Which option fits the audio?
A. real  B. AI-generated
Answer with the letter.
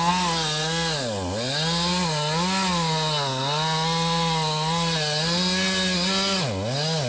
A